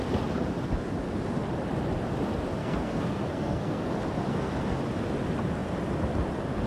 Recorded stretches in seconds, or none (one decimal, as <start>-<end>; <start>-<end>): 0.0-2.6; 3.9-4.3; 4.8-6.7